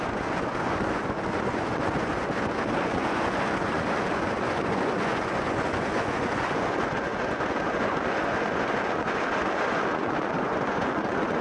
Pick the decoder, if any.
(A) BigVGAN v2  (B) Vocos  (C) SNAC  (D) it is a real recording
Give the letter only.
B